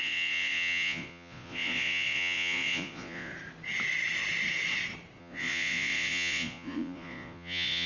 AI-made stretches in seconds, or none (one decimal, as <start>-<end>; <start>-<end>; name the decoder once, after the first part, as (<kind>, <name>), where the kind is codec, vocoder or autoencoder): 0.0-3.3 (vocoder, Vocos); 5.2-7.9